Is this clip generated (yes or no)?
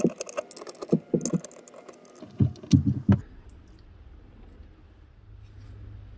no